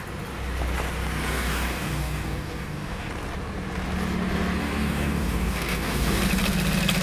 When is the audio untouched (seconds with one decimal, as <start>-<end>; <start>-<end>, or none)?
0.0-1.3; 3.1-4.6; 6.2-7.0